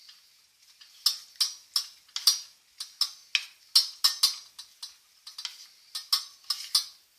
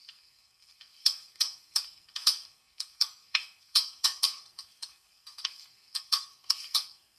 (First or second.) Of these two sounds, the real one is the first